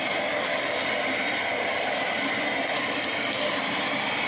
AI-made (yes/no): no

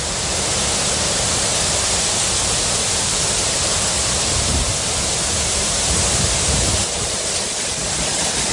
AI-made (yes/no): yes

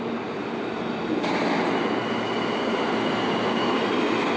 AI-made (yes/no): no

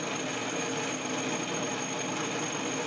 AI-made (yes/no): no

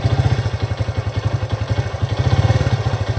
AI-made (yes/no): no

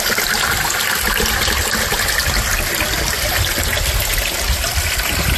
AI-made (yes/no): no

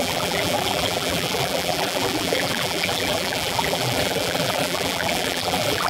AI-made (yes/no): yes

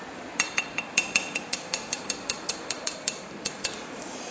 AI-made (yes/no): yes